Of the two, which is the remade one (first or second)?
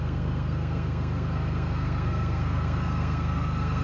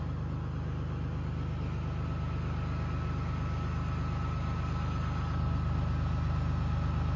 first